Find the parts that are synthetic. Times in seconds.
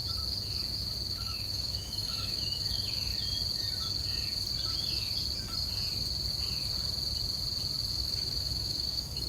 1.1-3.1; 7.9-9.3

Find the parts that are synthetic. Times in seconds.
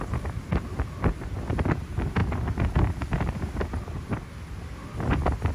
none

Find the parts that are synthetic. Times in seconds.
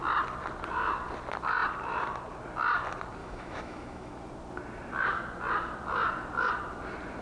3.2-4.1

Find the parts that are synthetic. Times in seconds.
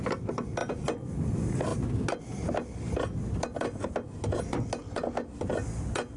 none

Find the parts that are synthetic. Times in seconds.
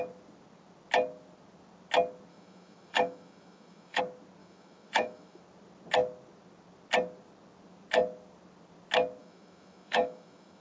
2.3-4.0; 4.4-5.4; 9.2-10.6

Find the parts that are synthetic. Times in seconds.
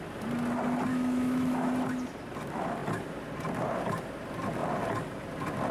0.9-1.7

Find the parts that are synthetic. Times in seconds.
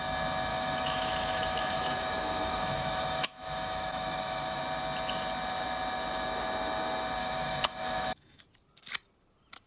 0.5-4.6; 7.2-8.4